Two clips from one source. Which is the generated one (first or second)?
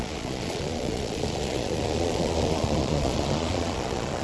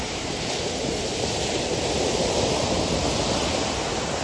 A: first